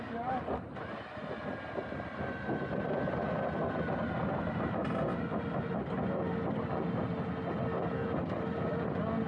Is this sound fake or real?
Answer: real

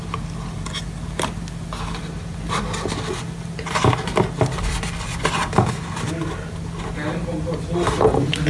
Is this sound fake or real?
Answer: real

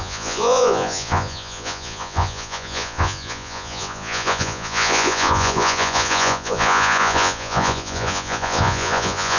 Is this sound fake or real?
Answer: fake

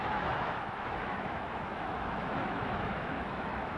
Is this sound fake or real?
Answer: fake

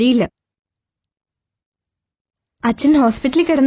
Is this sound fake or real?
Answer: real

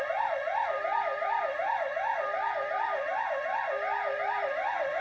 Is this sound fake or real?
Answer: real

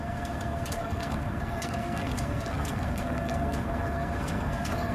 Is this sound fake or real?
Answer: fake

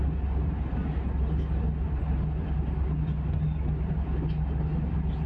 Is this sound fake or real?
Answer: real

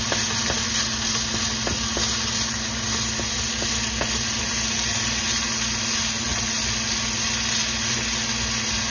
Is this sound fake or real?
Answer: real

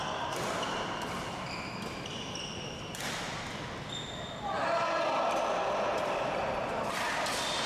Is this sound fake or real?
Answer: real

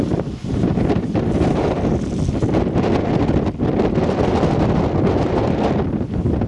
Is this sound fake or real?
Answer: real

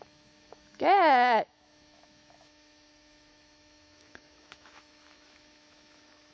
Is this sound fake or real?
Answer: fake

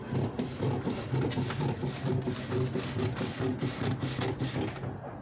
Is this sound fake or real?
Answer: real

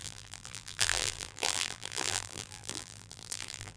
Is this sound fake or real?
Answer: fake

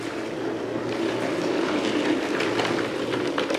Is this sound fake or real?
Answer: real